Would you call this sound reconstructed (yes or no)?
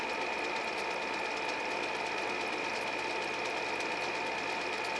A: no